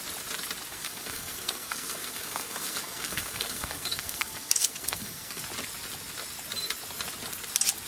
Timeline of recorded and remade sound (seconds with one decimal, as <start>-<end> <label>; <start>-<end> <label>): 0.0-0.7 recorded; 0.7-5.4 remade; 5.4-7.9 recorded